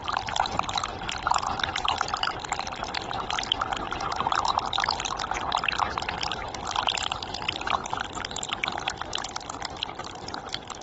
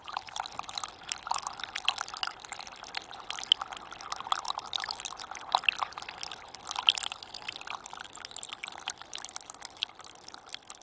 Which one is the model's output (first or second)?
first